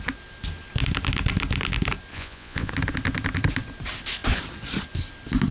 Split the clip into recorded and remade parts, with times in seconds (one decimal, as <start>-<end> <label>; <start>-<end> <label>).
0.0-2.1 recorded; 2.1-2.7 remade; 2.7-5.5 recorded